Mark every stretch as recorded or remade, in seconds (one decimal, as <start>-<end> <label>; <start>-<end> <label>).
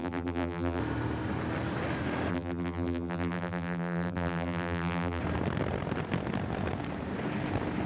0.0-0.8 remade; 0.8-2.3 recorded; 2.3-5.2 remade; 5.2-7.9 recorded